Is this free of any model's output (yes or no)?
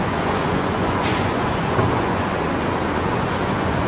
no